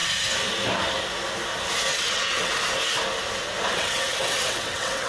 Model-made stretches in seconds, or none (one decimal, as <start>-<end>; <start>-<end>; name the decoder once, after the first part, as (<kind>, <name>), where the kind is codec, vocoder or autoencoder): 1.9-2.5 (vocoder, WaveNeXt); 3.7-5.1